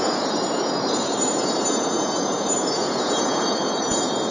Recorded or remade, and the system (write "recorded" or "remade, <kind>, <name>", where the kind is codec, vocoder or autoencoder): remade, vocoder, Vocos